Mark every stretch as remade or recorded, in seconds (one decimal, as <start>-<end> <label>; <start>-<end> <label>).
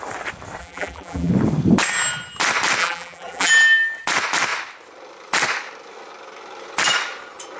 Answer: 0.0-0.6 recorded; 0.6-1.3 remade; 1.3-2.8 recorded; 2.8-3.5 remade; 3.5-7.6 recorded